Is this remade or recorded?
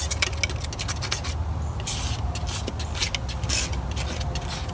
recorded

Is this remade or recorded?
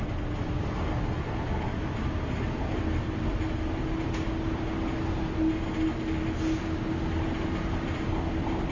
recorded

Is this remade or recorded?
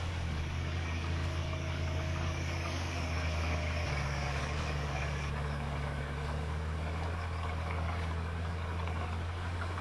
remade